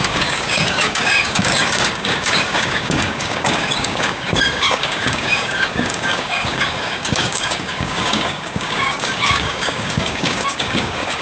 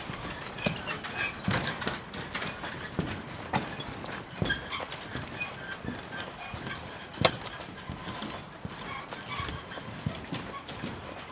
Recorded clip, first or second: second